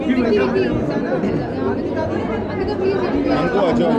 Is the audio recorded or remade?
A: recorded